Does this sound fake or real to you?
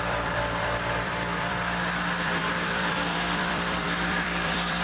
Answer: fake